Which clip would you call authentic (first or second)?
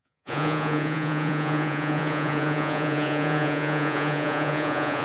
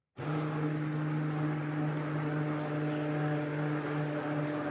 second